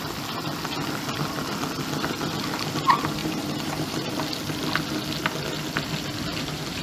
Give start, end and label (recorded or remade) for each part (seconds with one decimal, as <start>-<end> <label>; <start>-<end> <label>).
0.0-3.2 recorded; 3.2-4.1 remade; 4.1-6.3 recorded; 6.3-6.8 remade